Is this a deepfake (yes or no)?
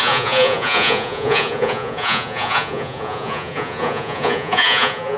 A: yes